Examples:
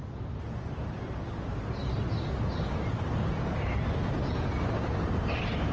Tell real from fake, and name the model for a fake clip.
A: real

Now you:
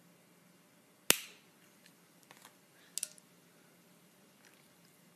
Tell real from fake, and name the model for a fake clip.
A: real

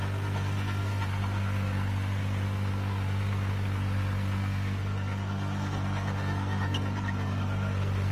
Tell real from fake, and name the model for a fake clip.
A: fake, codec, SNAC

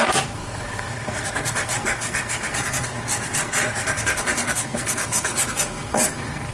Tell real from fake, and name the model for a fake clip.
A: fake, codec, SNAC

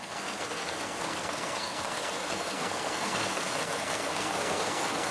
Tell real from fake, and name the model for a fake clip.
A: fake, codec, SNAC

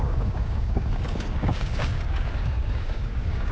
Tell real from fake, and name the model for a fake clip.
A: fake, codec, DAC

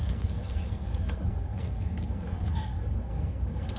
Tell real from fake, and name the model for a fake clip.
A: fake, codec, SNAC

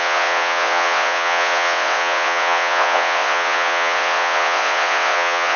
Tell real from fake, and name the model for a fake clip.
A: fake, vocoder, WaveNeXt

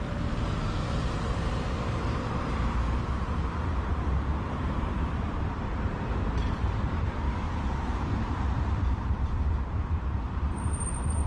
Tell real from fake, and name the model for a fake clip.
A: fake, vocoder, BigVGAN v2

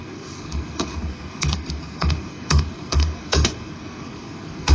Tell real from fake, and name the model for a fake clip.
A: fake, codec, SNAC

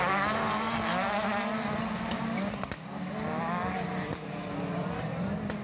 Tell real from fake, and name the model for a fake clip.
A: real